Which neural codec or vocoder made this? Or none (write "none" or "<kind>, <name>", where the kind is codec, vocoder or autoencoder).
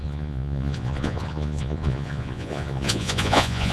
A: vocoder, Vocos